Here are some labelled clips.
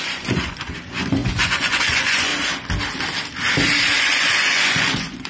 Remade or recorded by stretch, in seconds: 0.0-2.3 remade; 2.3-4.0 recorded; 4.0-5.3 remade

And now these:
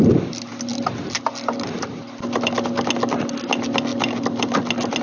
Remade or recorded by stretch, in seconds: 0.0-5.0 recorded

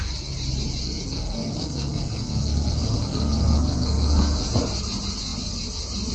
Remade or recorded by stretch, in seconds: 0.0-0.8 recorded; 0.8-4.5 remade; 4.5-6.1 recorded